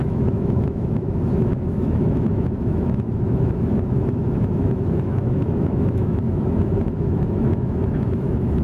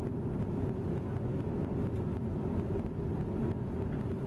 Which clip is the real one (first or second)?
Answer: second